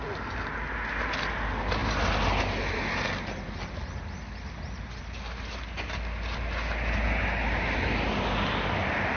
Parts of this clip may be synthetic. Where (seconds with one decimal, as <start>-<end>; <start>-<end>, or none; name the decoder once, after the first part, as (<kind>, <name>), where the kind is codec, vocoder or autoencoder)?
none